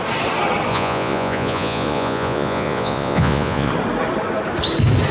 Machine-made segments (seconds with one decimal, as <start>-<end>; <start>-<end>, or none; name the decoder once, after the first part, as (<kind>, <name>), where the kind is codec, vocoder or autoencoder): 0.7-3.7 (vocoder, Vocos)